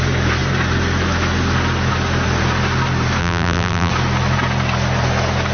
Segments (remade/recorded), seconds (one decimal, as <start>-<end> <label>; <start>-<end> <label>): 0.0-3.2 recorded; 3.2-3.9 remade; 3.9-5.5 recorded